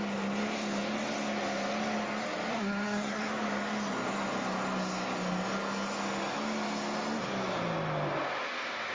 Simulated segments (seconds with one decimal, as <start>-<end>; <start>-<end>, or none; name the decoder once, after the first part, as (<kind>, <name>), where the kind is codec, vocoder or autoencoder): 2.5-3.3 (codec, SNAC)